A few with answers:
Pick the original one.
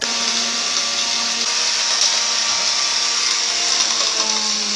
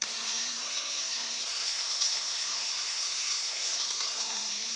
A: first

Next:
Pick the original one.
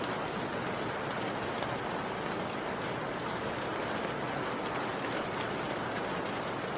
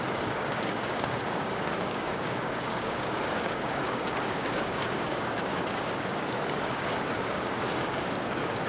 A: first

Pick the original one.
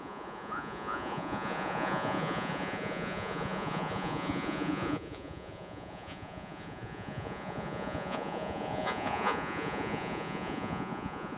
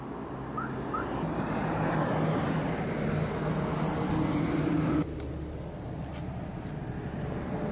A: second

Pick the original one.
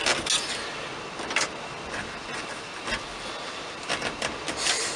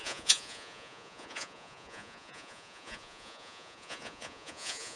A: first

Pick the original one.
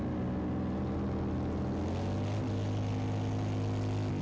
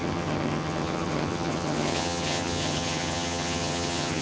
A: first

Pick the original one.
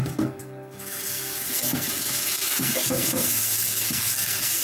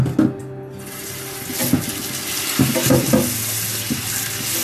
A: second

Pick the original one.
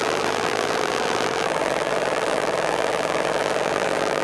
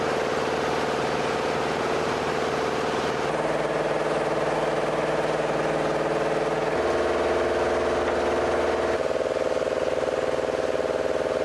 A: second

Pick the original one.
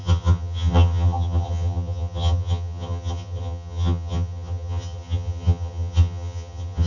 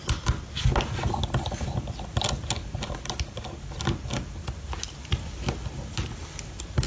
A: second